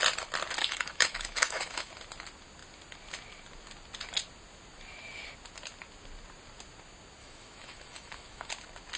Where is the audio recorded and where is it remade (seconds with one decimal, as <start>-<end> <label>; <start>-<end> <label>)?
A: 0.0-0.6 recorded; 0.6-1.9 remade; 1.9-7.2 recorded; 7.2-8.5 remade; 8.5-9.0 recorded